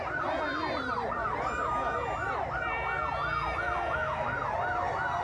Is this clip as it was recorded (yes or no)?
yes